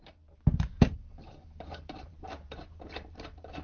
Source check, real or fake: fake